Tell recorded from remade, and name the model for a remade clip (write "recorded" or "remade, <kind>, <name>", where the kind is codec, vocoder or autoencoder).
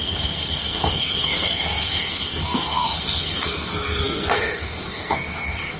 remade, codec, SNAC